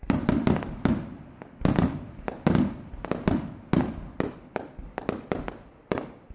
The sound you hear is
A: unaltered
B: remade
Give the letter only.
A